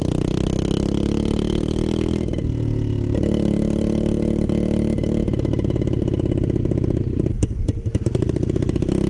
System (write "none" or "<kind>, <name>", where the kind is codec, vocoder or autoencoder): none